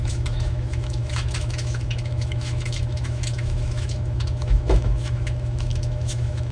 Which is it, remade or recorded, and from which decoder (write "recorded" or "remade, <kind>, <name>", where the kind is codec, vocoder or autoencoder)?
remade, autoencoder, DAC-VAE